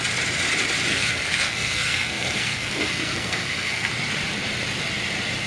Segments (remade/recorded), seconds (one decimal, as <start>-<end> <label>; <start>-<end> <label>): 0.0-0.9 recorded; 0.9-3.9 remade; 3.9-5.5 recorded